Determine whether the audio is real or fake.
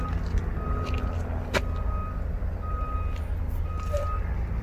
real